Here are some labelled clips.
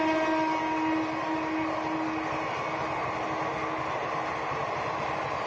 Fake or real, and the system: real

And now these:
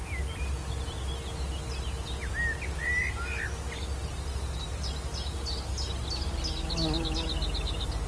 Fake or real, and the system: real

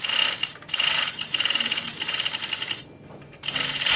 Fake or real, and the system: real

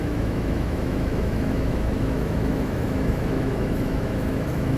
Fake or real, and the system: fake, autoencoder, DAC-VAE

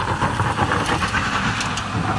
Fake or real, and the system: real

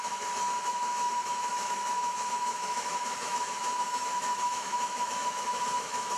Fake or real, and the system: fake, autoencoder, DAC-VAE